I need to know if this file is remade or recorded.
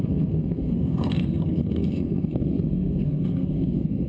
remade